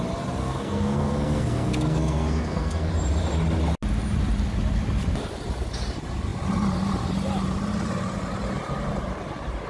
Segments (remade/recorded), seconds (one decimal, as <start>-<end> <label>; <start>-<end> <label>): 0.0-0.4 recorded; 0.4-2.9 remade; 2.9-9.7 recorded